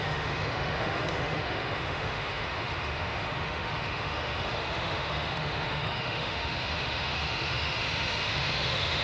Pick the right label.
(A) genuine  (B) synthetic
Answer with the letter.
B